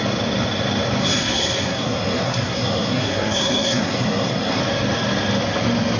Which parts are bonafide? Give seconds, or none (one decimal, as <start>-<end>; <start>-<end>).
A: 0.0-1.0; 4.6-6.0